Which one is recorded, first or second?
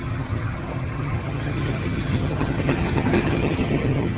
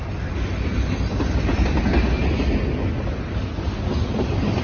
second